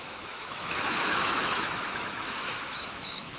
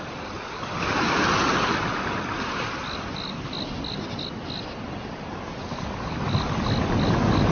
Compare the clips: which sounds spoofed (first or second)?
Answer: first